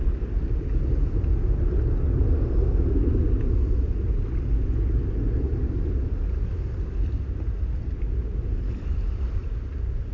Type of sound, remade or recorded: recorded